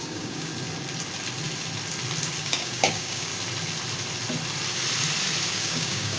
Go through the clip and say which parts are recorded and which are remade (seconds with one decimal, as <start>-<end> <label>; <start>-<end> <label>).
0.0-0.5 remade; 0.5-2.4 recorded; 2.4-3.3 remade; 3.3-5.5 recorded; 5.5-6.2 remade